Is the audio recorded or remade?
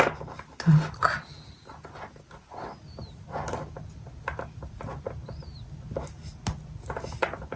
recorded